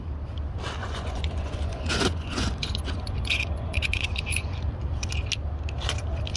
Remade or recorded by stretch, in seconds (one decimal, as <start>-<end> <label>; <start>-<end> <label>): 0.0-0.8 recorded; 0.8-4.6 remade; 4.6-6.4 recorded